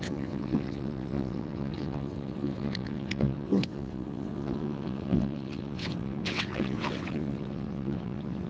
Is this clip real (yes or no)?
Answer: no